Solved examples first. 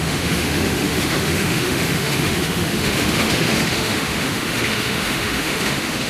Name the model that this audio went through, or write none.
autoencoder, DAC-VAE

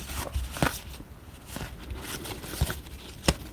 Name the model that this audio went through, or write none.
none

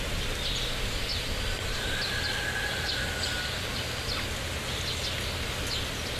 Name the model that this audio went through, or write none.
none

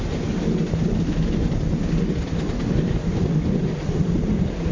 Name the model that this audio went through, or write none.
none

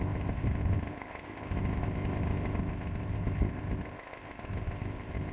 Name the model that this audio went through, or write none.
codec, ZipCodec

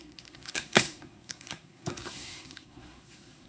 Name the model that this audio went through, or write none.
codec, SNAC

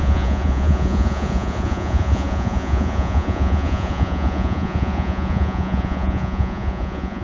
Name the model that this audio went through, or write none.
vocoder, Vocos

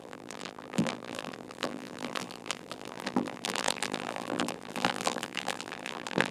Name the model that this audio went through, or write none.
vocoder, BigVGAN v2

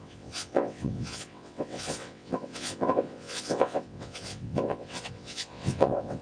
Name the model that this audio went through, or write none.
vocoder, WaveNeXt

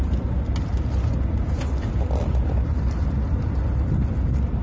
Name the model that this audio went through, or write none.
none